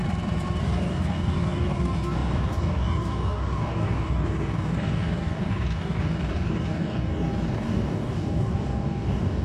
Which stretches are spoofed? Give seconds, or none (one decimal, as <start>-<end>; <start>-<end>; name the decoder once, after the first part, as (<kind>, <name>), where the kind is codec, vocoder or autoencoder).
0.6-9.4 (codec, DAC)